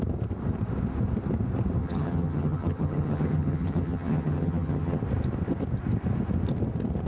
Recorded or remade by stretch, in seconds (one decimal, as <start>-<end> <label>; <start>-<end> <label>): 0.0-1.8 recorded; 1.8-5.0 remade; 5.0-7.1 recorded